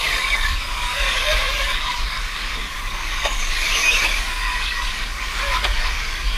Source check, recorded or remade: remade